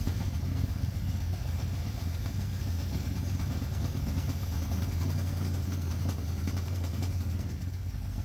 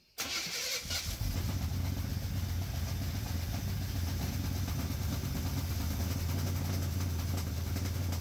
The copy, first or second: first